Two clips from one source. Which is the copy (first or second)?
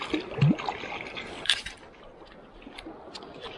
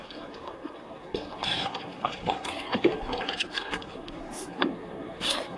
second